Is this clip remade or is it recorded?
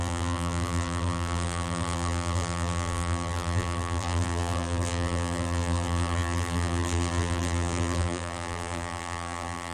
remade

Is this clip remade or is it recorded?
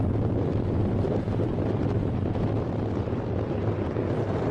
recorded